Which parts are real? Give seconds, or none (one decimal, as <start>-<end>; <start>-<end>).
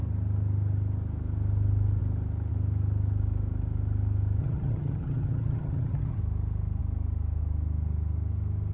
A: 0.0-4.4; 6.2-8.7